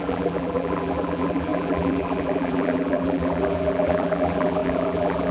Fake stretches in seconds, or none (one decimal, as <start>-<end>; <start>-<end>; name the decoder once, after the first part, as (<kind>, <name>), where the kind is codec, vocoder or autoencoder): 0.0-5.3 (vocoder, BigVGAN v2)